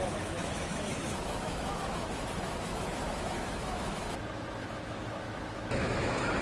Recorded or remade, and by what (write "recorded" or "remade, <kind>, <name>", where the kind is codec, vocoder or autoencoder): remade, autoencoder, DAC-VAE